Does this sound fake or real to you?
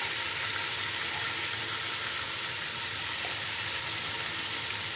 real